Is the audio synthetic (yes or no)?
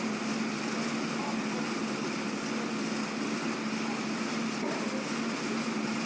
no